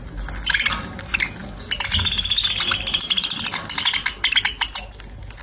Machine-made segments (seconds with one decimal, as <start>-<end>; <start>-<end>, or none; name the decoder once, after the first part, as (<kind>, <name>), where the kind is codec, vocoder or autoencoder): none